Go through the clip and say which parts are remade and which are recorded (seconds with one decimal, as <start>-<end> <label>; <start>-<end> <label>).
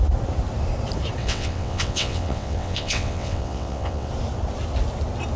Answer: 0.0-1.2 recorded; 1.2-4.1 remade; 4.1-5.4 recorded